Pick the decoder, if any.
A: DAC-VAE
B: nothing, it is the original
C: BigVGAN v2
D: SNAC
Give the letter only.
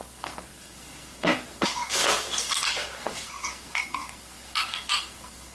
D